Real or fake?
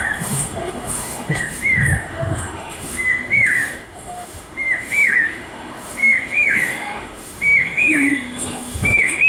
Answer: fake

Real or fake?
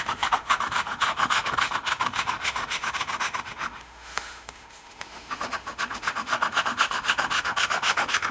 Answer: fake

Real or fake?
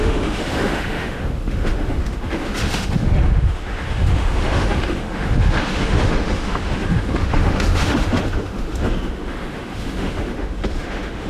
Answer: fake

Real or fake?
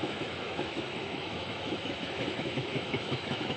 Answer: fake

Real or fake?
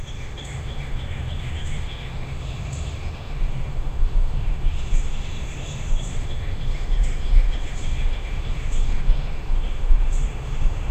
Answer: fake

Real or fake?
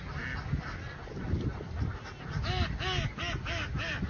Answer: real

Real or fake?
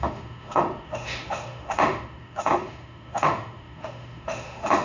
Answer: fake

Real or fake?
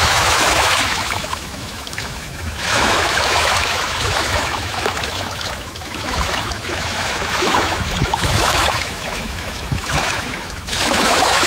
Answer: fake